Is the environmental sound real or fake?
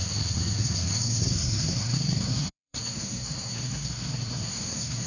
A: fake